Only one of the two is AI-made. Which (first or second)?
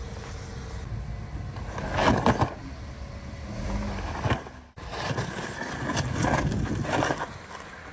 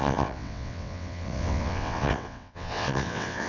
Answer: second